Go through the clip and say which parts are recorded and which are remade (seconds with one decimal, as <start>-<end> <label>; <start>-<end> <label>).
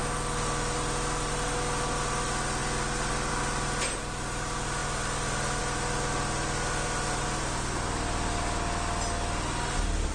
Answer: 0.0-10.1 recorded